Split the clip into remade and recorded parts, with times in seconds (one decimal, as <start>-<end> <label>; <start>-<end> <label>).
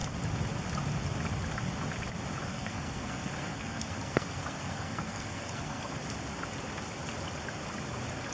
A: 0.0-2.5 recorded; 2.5-5.9 remade; 5.9-8.3 recorded